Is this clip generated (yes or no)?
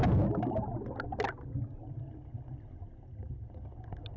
no